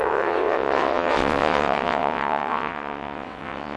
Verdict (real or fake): fake